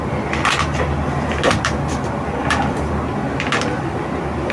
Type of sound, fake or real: real